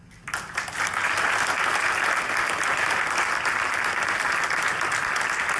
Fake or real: real